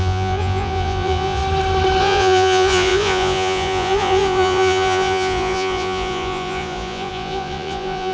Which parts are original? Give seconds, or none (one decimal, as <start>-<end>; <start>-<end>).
1.4-2.0